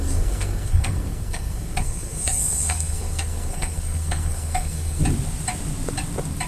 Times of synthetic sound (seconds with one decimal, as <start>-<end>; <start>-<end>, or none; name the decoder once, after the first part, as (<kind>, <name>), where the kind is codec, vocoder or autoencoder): 0.0-5.0 (codec, SNAC)